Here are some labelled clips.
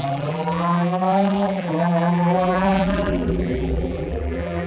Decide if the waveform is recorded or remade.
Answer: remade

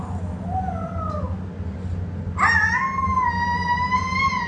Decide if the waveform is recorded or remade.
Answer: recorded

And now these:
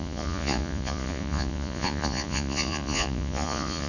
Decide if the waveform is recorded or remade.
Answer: remade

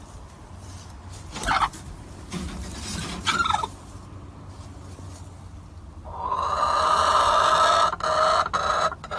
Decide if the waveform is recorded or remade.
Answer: recorded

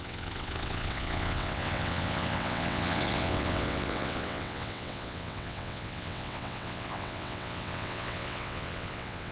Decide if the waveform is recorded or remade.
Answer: remade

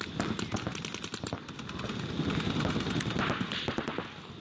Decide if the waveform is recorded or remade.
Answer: recorded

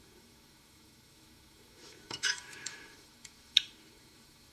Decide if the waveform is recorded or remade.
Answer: remade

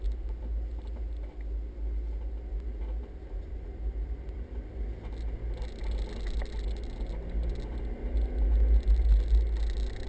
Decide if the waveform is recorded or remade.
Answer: recorded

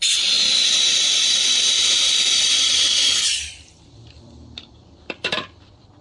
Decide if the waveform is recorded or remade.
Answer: remade